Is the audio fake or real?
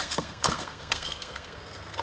fake